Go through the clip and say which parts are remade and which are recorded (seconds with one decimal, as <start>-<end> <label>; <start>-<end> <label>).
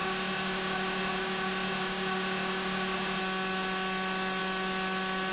0.0-3.2 remade; 3.2-5.3 recorded